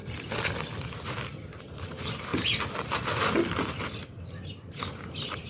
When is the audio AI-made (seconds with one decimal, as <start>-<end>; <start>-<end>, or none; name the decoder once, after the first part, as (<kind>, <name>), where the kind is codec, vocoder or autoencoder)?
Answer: 1.6-2.3 (vocoder, BigVGAN v2); 4.4-5.5